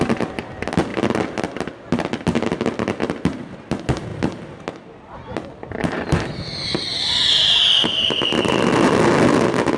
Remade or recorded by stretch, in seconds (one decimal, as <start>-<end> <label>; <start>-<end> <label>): 0.0-9.8 recorded